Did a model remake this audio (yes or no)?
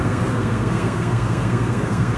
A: yes